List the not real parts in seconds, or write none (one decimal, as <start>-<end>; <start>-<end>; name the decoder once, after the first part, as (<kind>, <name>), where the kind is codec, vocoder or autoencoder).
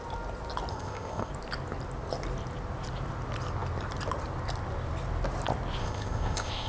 0.7-1.3 (codec, ZipCodec); 5.8-6.7